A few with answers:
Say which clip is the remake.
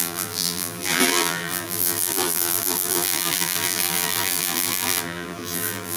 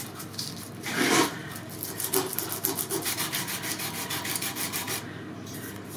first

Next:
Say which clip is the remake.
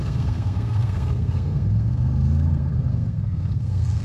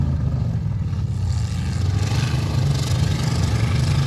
first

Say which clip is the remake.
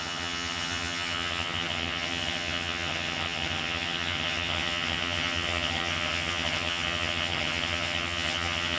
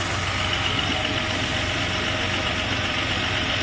first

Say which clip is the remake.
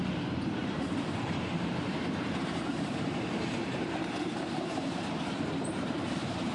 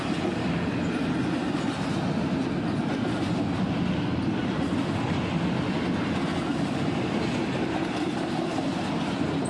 first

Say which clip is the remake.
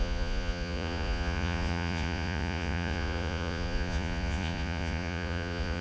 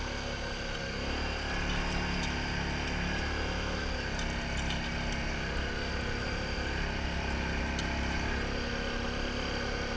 first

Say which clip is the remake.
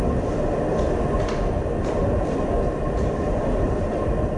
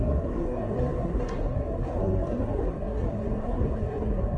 second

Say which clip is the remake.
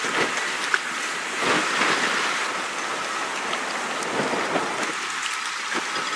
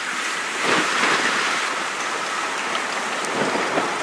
second